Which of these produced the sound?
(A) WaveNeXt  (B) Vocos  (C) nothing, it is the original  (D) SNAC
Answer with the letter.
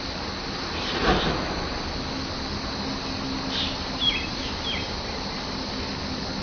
C